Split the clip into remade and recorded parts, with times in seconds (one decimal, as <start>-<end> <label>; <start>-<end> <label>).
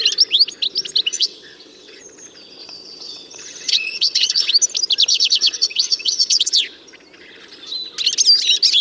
0.0-1.1 recorded; 1.1-2.0 remade; 2.0-2.6 recorded; 2.6-4.5 remade; 4.5-5.1 recorded; 5.1-6.6 remade; 6.6-8.8 recorded